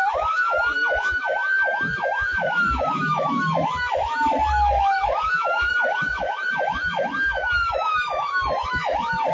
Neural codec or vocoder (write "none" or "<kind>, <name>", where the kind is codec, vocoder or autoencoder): autoencoder, DAC-VAE